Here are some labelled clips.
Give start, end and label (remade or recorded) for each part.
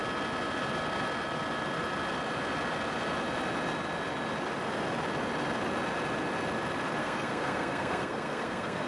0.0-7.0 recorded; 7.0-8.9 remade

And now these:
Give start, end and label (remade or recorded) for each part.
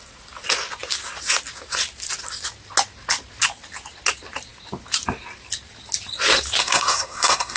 0.0-6.6 recorded; 6.6-7.6 remade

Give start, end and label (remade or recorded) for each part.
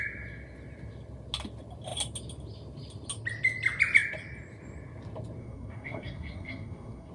0.0-5.4 recorded; 5.4-7.1 remade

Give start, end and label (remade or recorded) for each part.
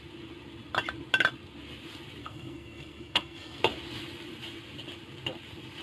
0.0-2.2 recorded; 2.2-3.6 remade; 3.6-5.8 recorded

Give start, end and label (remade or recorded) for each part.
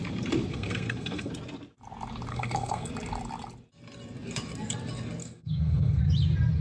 0.0-0.5 recorded; 0.5-1.3 remade; 1.3-2.3 recorded; 2.3-2.9 remade; 2.9-5.2 recorded; 5.2-6.0 remade; 6.0-6.6 recorded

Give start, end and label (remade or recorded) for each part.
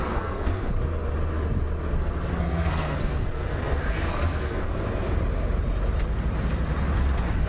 0.0-0.7 remade; 0.7-2.3 recorded; 2.3-4.7 remade; 4.7-7.5 recorded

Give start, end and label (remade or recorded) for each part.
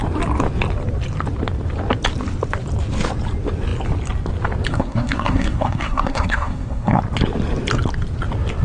0.0-4.7 recorded; 4.7-7.0 remade; 7.0-8.6 recorded